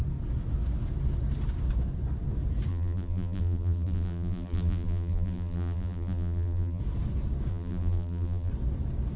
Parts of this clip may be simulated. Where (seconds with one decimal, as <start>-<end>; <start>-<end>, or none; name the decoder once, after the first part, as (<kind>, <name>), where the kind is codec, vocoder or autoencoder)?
2.7-6.8 (vocoder, BigVGAN v2); 7.5-8.5